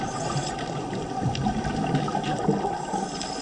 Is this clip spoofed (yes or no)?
no